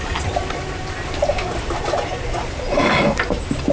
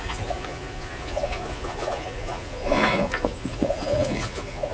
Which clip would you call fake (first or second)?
second